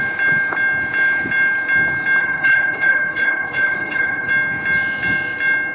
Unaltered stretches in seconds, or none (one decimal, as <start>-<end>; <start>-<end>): 0.0-2.2; 4.3-5.7